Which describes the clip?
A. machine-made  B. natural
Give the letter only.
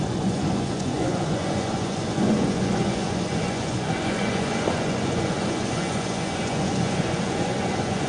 A